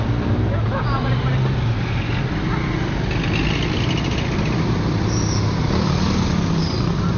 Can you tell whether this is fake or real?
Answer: real